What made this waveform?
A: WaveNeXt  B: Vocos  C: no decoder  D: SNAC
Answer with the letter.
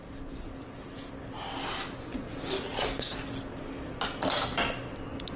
C